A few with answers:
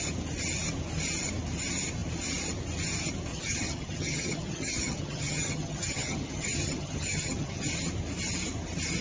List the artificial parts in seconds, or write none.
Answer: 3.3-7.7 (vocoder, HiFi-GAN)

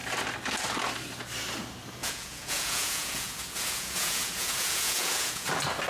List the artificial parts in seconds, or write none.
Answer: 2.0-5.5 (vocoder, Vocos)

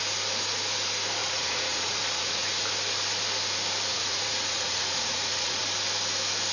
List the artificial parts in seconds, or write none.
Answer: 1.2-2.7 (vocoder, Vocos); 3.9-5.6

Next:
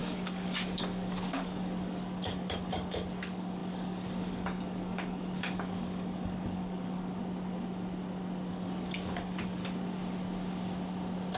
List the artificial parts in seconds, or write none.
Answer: 0.0-7.2 (codec, DAC); 8.5-9.6

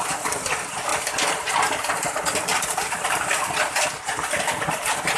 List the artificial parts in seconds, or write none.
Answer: none

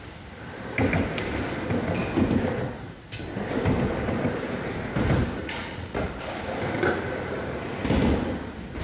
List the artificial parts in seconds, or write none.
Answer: 5.4-6.1 (vocoder, Vocos)